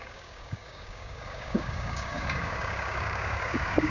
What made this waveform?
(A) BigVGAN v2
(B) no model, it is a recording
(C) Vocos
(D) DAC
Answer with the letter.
D